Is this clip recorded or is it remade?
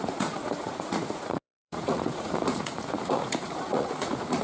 remade